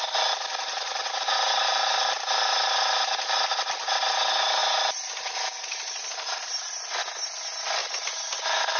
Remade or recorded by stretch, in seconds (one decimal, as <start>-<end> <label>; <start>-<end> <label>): 0.0-8.8 recorded